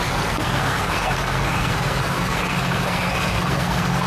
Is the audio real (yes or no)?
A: no